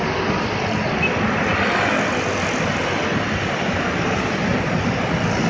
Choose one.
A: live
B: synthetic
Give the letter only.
A